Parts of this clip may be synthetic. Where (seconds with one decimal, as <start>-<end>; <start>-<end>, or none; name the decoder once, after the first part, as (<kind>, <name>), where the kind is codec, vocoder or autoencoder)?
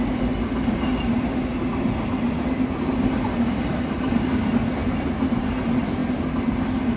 6.0-7.0 (vocoder, BigVGAN v2)